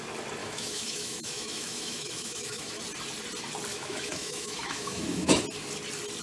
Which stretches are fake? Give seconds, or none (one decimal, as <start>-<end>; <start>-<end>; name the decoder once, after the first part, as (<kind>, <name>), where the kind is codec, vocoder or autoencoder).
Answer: 0.4-2.8 (autoencoder, DAC-VAE); 3.7-5.4